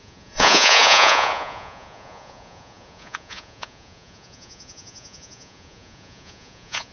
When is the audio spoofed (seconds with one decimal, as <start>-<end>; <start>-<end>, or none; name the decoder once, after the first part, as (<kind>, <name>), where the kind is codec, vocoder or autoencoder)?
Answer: 0.0-6.9 (vocoder, Vocos)